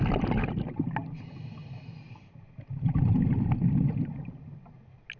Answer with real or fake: real